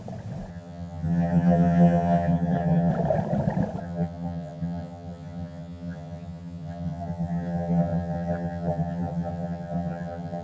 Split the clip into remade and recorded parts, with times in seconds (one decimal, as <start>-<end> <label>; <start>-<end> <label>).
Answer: 0.0-0.5 recorded; 0.5-2.9 remade; 2.9-3.8 recorded; 3.8-10.4 remade